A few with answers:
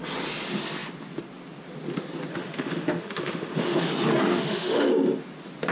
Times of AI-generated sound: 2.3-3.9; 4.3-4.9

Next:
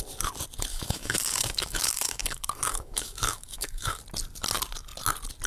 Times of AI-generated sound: 0.7-4.0

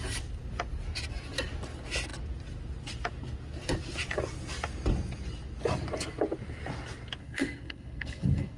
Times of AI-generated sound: 7.2-8.6

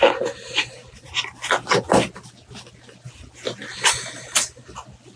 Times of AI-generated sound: none

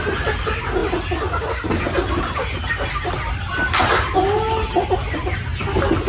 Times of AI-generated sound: none

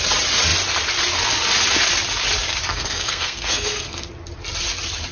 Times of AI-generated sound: 2.7-4.1

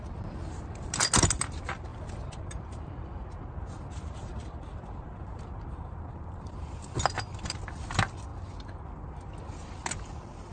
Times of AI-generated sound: 1.9-6.7